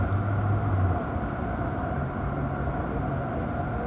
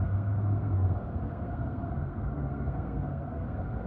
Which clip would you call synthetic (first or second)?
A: second